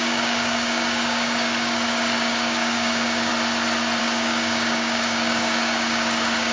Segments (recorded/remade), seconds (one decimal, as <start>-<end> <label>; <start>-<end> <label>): 0.0-3.3 remade; 3.3-4.0 recorded; 4.0-6.5 remade